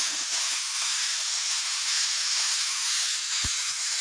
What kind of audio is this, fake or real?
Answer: fake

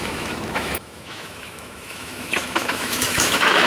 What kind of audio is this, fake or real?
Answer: fake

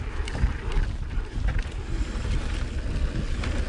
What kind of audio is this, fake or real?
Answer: real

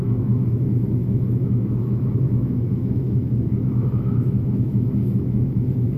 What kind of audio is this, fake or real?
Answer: fake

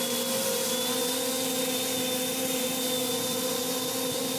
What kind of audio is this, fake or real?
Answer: real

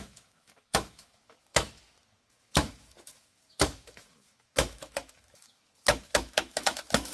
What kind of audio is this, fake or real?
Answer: fake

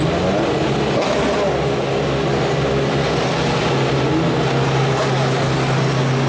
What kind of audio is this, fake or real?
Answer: real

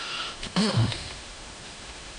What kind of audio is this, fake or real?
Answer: fake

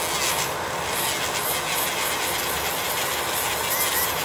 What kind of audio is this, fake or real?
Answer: real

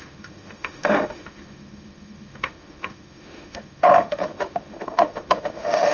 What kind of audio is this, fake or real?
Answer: fake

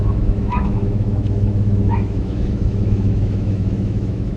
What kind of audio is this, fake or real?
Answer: fake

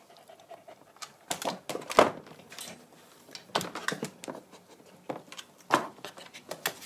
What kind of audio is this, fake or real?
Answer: real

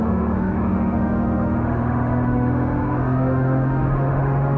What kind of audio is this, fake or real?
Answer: fake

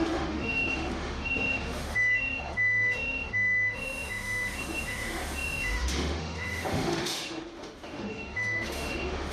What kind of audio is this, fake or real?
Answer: fake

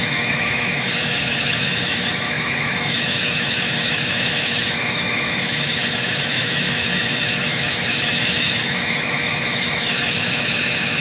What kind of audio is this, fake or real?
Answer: fake